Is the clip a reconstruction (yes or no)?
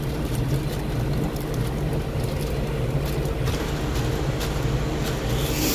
no